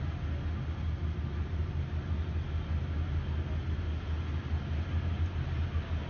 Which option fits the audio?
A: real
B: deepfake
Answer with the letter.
A